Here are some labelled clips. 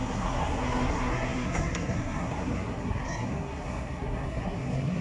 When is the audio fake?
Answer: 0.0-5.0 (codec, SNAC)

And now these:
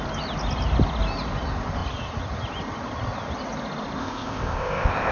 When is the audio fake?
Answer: 4.0-5.1 (codec, ZipCodec)

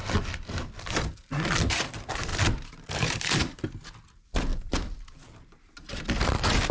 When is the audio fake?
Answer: 2.3-3.7 (vocoder, BigVGAN v2); 4.5-6.0

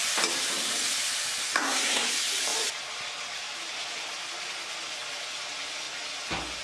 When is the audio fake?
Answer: 1.4-2.1 (codec, SNAC)